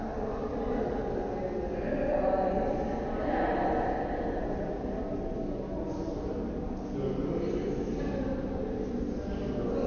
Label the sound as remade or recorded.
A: recorded